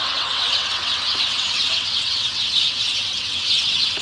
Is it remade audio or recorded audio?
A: remade